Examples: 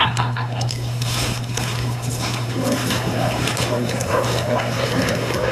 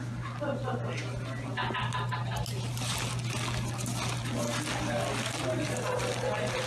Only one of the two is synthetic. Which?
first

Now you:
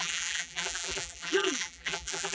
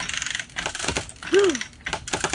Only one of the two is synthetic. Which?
first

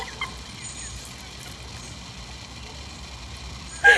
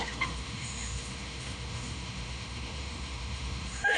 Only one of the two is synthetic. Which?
second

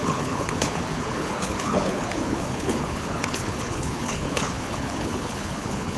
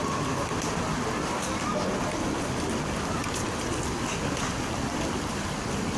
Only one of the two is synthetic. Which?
first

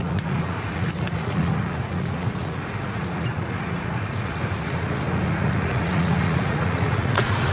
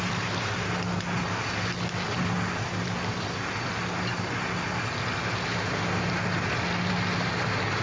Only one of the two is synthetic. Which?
first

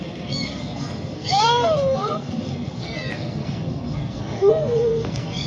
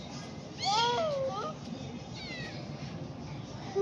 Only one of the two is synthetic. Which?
first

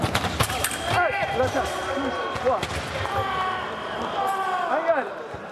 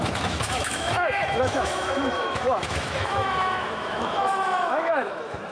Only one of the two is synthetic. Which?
second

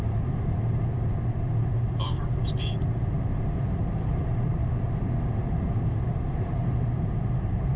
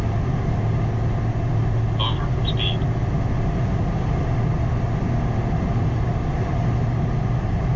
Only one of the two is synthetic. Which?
first